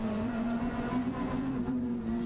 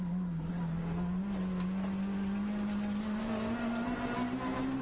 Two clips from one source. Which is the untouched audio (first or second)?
second